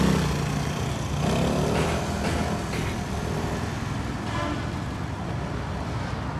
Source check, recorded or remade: recorded